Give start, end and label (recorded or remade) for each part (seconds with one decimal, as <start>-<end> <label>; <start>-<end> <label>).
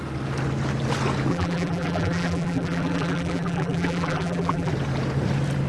0.0-1.3 recorded; 1.3-4.7 remade; 4.7-5.7 recorded